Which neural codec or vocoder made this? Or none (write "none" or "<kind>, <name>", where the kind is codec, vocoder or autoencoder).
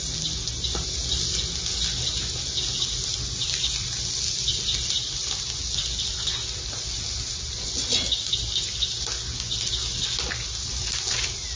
none